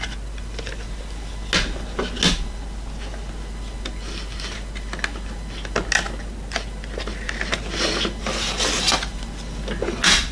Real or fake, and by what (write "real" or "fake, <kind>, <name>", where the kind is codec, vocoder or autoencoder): real